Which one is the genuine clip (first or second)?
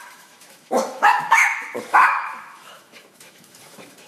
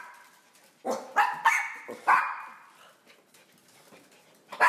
second